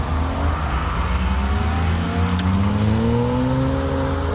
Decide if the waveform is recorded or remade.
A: recorded